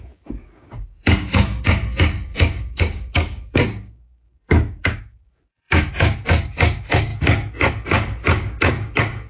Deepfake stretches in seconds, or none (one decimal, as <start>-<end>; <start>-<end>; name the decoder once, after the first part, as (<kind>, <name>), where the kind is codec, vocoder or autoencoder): 0.0-9.3 (codec, DAC)